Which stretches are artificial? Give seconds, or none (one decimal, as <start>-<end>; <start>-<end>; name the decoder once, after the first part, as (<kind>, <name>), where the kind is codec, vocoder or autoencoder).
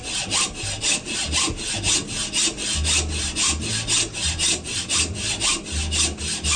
none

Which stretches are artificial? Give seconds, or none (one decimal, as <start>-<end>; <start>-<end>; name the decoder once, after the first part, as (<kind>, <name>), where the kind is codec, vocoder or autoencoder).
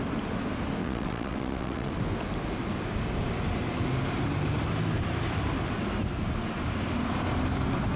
0.8-1.9 (vocoder, WaveNeXt)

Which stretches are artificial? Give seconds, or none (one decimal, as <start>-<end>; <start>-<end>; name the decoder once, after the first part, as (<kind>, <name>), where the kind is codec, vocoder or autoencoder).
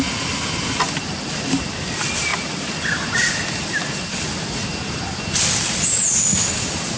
none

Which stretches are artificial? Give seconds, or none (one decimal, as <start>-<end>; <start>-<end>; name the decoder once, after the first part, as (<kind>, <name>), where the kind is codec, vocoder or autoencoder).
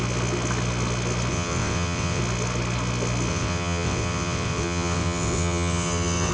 1.3-2.2 (vocoder, WaveNeXt); 3.3-6.3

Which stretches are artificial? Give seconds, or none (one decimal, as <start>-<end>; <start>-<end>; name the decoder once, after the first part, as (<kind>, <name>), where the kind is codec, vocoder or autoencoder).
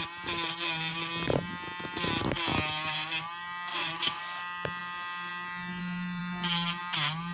3.7-4.2 (vocoder, WaveNeXt)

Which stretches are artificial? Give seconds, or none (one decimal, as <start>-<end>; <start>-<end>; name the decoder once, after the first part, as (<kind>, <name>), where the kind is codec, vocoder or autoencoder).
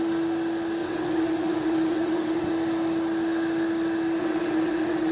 0.8-2.5 (vocoder, WaveNeXt); 4.2-5.1